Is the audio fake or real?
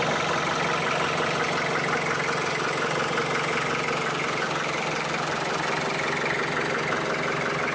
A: real